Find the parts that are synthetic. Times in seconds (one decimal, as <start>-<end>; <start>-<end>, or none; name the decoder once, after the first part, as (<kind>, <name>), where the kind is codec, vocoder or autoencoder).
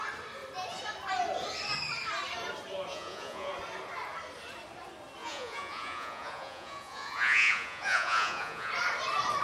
2.9-3.5 (vocoder, Vocos); 5.2-8.7